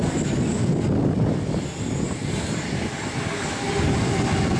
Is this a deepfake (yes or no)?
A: no